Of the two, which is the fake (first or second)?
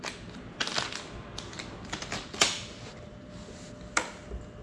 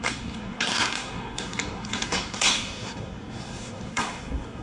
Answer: second